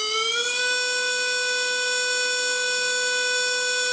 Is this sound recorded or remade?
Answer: recorded